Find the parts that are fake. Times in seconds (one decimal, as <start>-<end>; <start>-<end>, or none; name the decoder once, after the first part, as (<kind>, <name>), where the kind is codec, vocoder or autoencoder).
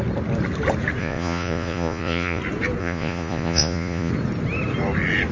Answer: 1.0-2.4 (vocoder, Vocos); 2.8-4.1